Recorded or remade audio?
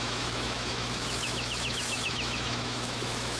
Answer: remade